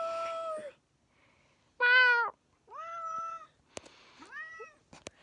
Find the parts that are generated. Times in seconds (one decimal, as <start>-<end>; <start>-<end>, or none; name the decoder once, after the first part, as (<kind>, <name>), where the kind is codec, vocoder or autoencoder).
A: none